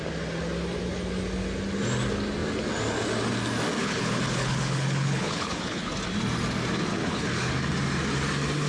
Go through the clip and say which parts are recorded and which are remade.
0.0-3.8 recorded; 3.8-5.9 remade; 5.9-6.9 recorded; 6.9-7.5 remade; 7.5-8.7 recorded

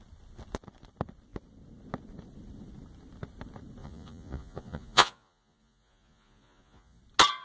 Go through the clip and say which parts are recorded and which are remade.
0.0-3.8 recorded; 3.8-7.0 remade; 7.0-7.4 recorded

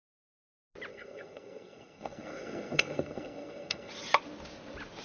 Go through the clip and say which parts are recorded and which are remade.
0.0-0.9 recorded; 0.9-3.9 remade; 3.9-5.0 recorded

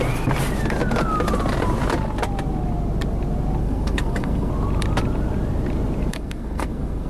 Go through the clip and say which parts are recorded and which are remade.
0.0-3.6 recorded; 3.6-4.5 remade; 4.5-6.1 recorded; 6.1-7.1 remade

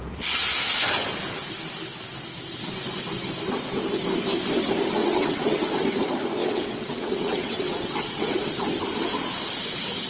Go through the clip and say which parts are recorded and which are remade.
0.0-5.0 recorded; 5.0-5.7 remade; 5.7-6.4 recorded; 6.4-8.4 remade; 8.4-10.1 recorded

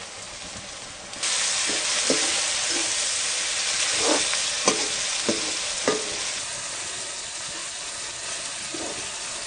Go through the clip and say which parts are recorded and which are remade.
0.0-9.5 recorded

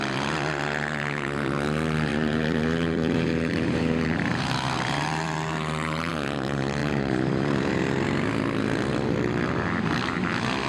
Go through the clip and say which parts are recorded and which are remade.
0.0-2.1 recorded; 2.1-6.1 remade; 6.1-6.8 recorded; 6.8-7.7 remade; 7.7-10.7 recorded

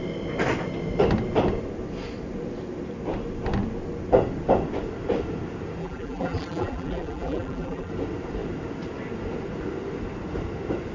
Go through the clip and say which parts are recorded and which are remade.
0.0-5.8 recorded; 5.8-7.9 remade; 7.9-10.9 recorded